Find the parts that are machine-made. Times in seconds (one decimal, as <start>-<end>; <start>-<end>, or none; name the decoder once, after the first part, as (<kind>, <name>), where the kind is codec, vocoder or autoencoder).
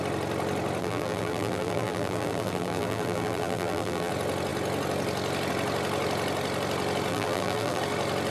0.8-4.1 (vocoder, BigVGAN v2); 7.1-7.8